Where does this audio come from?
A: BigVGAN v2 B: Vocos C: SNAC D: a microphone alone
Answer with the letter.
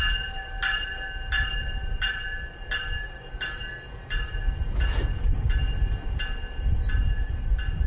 D